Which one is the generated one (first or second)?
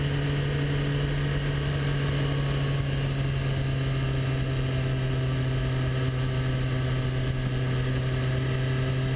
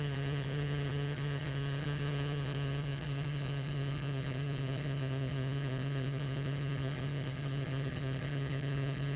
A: second